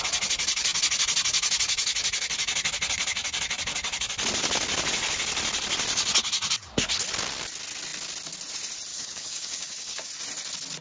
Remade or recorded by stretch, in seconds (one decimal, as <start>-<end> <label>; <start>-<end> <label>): 0.0-8.9 recorded; 8.9-10.1 remade; 10.1-10.8 recorded